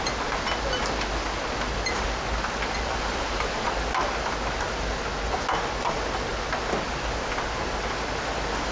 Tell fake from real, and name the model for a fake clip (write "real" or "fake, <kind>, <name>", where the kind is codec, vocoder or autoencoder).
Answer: real